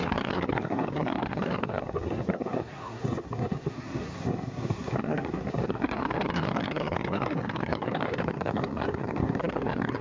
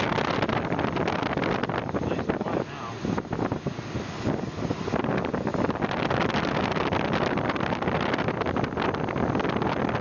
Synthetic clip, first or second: first